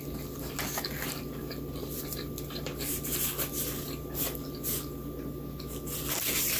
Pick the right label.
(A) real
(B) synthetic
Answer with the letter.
A